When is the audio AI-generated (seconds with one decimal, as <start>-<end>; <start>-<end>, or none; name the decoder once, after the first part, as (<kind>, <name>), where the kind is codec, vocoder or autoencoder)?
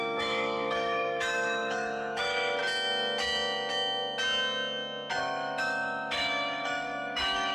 0.0-2.6 (autoencoder, DAC-VAE); 5.2-7.5